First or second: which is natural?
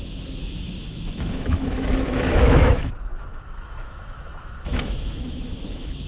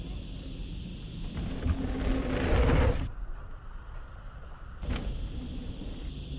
second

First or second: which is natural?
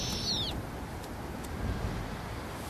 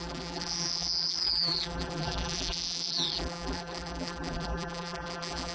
first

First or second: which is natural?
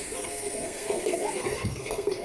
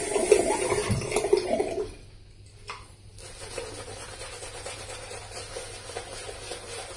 second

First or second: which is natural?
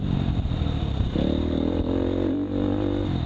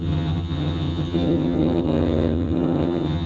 first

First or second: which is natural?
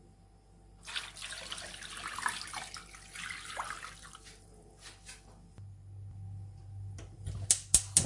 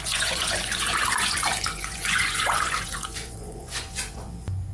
first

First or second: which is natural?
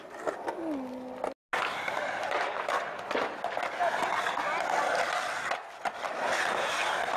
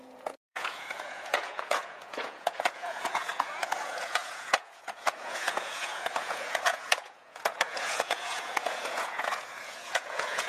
first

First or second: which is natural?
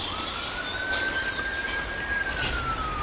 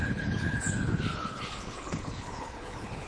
first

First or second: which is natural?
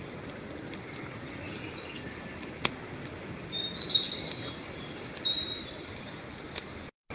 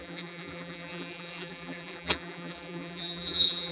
first